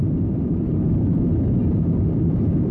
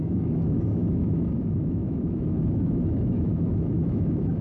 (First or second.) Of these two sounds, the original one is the first